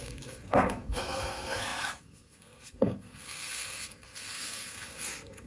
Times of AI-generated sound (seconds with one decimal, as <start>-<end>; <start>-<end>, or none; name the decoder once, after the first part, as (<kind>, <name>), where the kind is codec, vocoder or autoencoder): 0.0-5.5 (codec, SNAC)